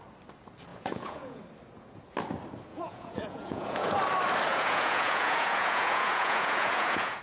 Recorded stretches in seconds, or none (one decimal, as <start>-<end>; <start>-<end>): 0.0-0.7; 1.4-2.7; 4.0-4.5